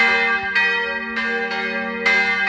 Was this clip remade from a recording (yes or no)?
no